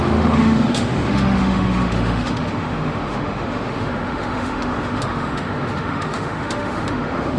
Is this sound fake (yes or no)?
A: yes